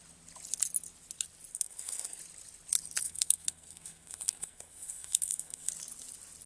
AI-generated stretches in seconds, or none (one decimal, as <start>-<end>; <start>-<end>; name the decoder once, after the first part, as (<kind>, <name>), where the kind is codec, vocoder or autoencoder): 1.5-2.2 (codec, SNAC); 3.0-5.7

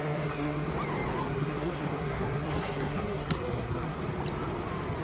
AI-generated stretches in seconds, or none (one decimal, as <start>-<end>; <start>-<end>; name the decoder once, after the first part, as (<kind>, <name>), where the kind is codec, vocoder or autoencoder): 0.0-0.7 (codec, SNAC); 1.2-4.0

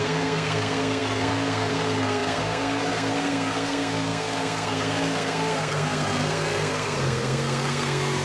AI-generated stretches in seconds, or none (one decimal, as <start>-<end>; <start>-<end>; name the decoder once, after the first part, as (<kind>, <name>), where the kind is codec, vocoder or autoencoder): 0.0-8.2 (codec, SNAC)

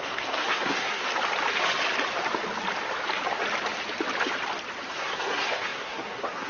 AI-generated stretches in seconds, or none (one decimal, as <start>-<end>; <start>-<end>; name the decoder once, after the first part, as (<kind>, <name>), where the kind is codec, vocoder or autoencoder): 0.0-1.0 (codec, SNAC); 4.9-6.5

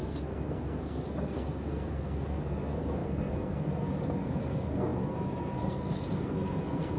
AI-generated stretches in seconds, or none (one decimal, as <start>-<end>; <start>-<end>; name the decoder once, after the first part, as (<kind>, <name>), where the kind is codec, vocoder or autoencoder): 0.0-7.0 (codec, SNAC)

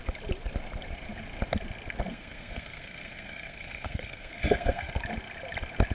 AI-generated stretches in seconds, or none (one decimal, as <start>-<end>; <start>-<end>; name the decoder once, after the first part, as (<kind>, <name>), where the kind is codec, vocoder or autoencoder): 2.1-4.9 (codec, SNAC)